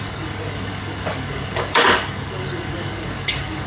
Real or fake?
fake